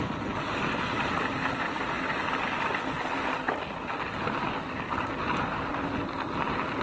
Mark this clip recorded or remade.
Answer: recorded